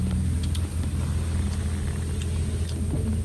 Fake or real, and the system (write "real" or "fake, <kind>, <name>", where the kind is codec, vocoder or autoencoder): real